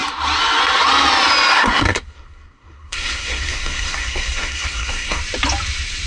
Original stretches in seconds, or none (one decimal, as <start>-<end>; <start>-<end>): 0.0-1.5; 5.2-6.1

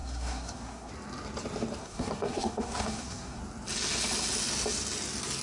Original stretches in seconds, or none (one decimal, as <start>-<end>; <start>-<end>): 0.9-1.8; 3.4-5.4

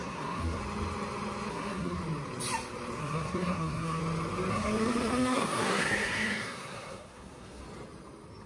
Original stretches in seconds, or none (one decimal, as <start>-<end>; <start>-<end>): 0.6-1.5; 2.0-3.0; 4.0-4.5; 7.6-8.5

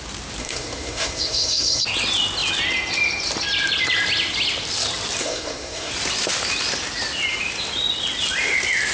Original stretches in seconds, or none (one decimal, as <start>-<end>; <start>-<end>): 0.0-0.4; 1.8-5.2; 5.9-8.9